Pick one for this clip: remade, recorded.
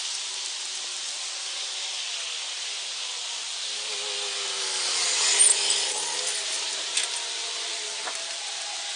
recorded